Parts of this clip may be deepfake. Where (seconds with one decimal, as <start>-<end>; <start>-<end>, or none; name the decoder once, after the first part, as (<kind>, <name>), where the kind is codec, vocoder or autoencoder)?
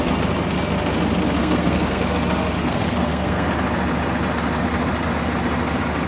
1.4-2.0 (codec, SNAC); 2.6-3.5